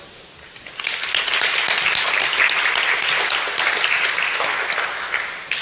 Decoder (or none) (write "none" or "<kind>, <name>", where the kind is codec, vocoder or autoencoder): none